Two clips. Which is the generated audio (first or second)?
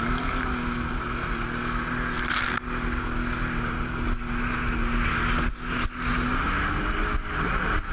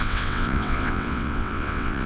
second